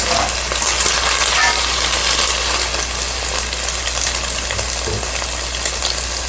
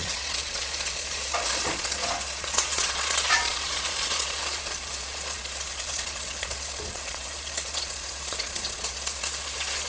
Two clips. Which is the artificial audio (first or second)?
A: second